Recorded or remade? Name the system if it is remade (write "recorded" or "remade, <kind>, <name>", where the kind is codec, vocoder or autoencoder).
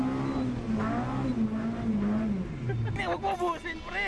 recorded